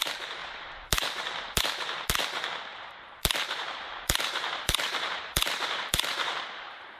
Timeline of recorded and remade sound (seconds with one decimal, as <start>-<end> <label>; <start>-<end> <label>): 0.0-0.4 recorded; 0.4-1.6 remade; 1.6-2.7 recorded; 2.7-7.0 remade